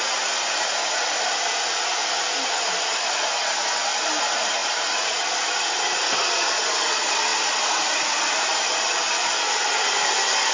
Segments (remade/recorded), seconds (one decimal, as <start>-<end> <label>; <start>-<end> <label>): 0.0-1.0 recorded; 1.0-3.5 remade; 3.5-4.6 recorded; 4.6-5.7 remade; 5.7-7.3 recorded; 7.3-9.3 remade; 9.3-10.5 recorded